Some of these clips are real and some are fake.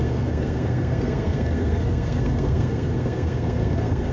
fake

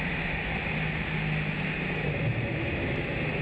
real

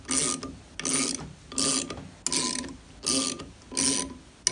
real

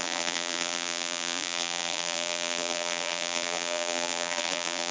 fake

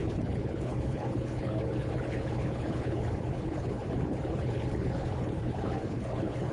fake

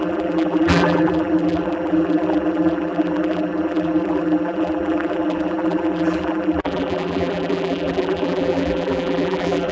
fake